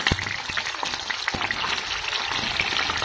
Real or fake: real